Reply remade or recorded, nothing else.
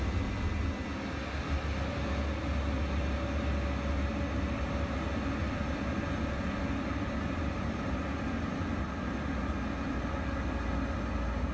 recorded